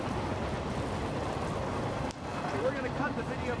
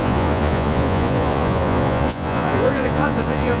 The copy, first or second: second